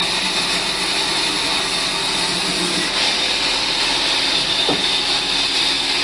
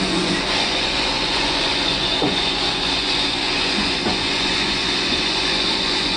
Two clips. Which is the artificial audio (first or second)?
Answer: second